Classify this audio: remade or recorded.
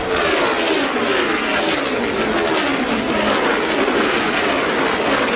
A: recorded